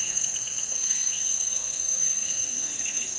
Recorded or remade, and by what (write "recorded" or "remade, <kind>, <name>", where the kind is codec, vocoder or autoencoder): remade, codec, SNAC